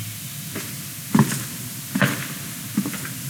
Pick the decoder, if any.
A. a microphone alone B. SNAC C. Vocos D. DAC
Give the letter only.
A